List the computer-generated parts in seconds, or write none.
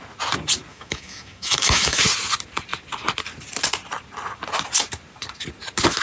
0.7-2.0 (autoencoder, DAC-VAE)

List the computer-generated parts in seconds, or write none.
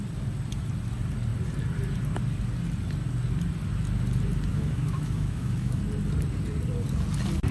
4.5-5.8 (autoencoder, DAC-VAE)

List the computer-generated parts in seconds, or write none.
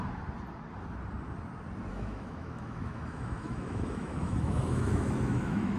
1.9-5.8 (autoencoder, DAC-VAE)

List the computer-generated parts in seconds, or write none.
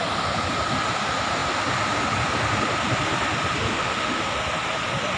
3.7-4.2 (autoencoder, DAC-VAE)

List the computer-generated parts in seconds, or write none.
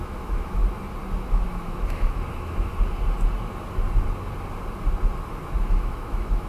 0.0-0.6 (autoencoder, DAC-VAE); 1.3-2.7; 5.6-6.5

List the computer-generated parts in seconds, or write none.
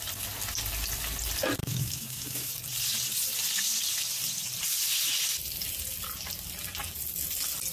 1.6-2.5 (autoencoder, DAC-VAE)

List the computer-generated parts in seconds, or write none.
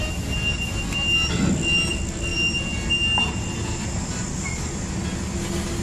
none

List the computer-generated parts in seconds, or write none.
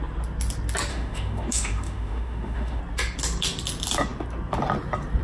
0.9-2.8 (autoencoder, DAC-VAE)